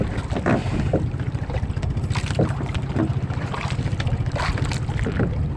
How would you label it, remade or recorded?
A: recorded